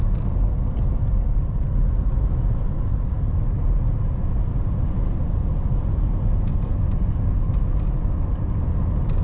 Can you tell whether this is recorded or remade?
recorded